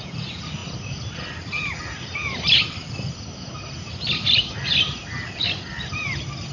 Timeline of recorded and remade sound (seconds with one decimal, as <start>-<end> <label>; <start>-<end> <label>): 0.0-6.5 recorded